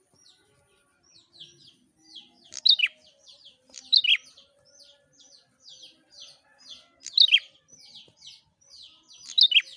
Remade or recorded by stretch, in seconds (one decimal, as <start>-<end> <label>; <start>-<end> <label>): 0.0-9.8 recorded